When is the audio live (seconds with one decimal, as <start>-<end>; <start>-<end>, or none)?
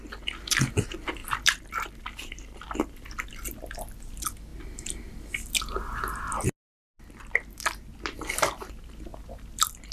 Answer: 0.0-9.9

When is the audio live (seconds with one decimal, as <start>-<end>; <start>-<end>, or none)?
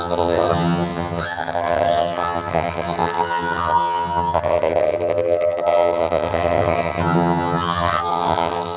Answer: none